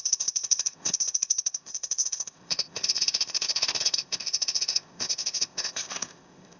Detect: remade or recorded remade